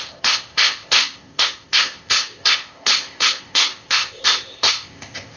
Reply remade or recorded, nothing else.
remade